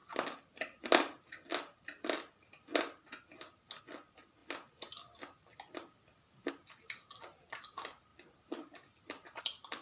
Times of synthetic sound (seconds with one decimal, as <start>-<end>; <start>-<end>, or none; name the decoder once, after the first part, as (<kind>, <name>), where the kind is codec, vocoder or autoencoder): none